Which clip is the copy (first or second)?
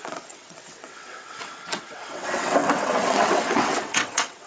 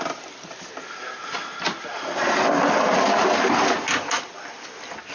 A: first